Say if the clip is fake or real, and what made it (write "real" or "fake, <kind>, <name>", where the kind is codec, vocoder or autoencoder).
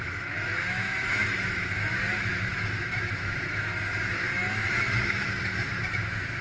fake, autoencoder, DAC-VAE